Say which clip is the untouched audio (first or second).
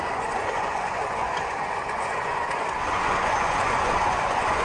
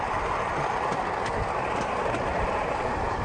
second